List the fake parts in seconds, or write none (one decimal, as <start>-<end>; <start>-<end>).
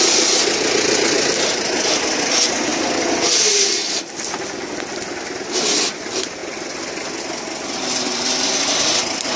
2.7-3.5